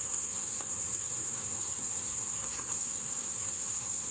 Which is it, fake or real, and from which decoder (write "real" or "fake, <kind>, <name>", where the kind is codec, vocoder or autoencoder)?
fake, codec, SNAC